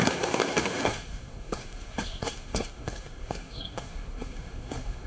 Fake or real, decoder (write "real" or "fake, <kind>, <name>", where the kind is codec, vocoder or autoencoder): fake, codec, SNAC